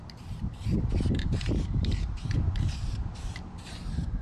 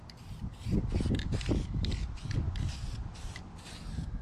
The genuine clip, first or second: second